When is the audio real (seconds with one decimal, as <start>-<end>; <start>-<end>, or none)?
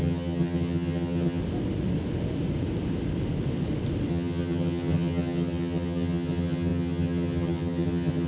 1.4-4.1